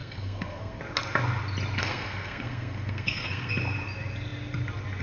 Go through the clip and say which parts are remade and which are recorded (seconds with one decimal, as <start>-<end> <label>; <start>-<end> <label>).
0.0-0.8 remade; 0.8-1.8 recorded; 1.8-3.5 remade; 3.5-5.0 recorded